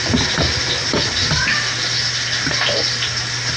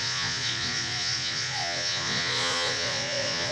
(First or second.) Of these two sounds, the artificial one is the second